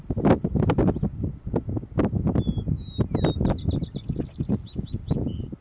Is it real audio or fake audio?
real